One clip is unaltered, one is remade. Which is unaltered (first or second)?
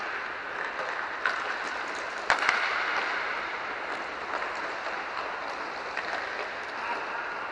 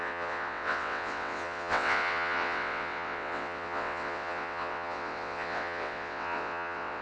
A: first